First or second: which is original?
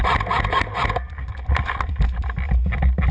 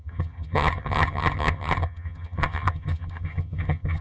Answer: first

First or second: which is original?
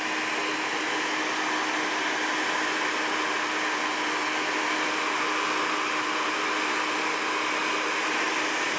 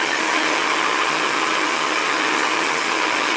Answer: first